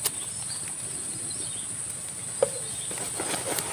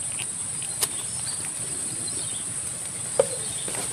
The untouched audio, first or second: first